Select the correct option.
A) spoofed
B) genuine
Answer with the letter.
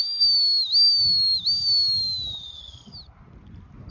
B